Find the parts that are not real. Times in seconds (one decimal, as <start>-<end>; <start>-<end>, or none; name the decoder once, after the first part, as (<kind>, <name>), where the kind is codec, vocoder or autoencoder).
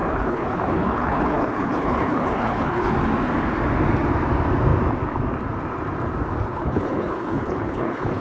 0.0-2.9 (codec, HILCodec); 6.4-8.2